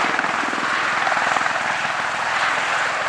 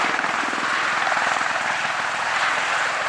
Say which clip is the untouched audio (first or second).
first